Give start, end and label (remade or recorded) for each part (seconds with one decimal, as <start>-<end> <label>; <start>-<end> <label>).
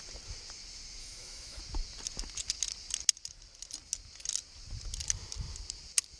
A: 0.0-1.0 recorded; 1.0-1.6 remade; 1.6-6.2 recorded